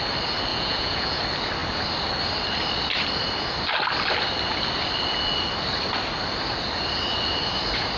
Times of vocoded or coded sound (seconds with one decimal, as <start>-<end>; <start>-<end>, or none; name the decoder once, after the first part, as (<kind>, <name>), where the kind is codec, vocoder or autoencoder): 0.5-1.2 (vocoder, Vocos)